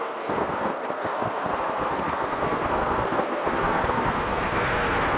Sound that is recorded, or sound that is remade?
remade